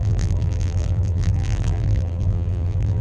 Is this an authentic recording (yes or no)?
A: no